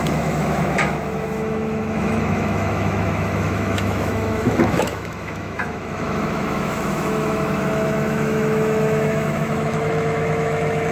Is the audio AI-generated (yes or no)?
yes